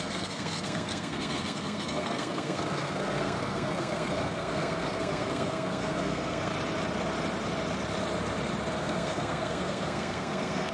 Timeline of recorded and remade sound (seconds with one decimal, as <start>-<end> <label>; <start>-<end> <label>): 0.0-6.5 remade; 6.5-8.7 recorded; 8.7-10.7 remade